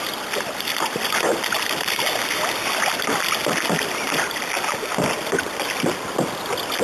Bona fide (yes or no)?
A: yes